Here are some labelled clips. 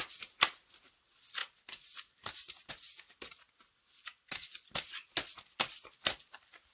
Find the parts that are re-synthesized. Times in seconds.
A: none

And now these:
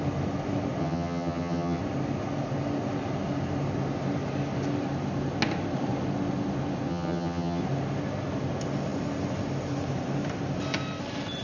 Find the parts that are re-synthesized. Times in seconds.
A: 0.8-1.8; 6.9-7.6

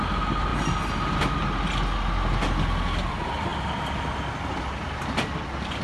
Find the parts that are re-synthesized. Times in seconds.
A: none

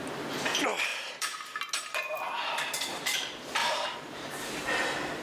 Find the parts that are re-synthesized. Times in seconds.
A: 0.9-1.7; 3.6-4.5